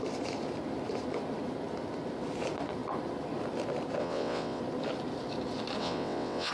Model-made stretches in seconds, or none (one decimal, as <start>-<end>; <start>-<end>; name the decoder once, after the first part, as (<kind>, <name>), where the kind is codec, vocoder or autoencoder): 4.0-4.6 (vocoder, WaveNeXt); 5.8-6.5